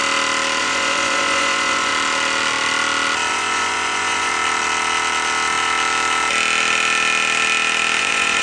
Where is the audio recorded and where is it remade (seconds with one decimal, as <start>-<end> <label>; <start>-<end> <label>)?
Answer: 0.0-0.6 recorded; 0.6-1.9 remade; 1.9-3.3 recorded; 3.3-4.3 remade; 4.3-8.0 recorded; 8.0-8.4 remade